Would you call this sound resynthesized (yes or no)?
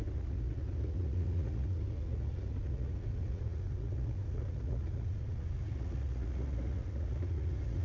yes